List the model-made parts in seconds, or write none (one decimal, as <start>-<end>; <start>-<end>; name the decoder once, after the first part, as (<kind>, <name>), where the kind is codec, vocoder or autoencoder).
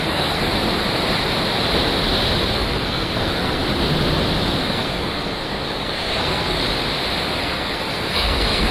0.0-0.5 (codec, SNAC); 2.5-3.6; 4.6-6.6; 7.4-8.7